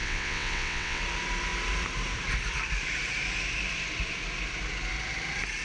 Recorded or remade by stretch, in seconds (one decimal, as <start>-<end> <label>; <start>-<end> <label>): 0.0-1.0 remade; 1.0-5.6 recorded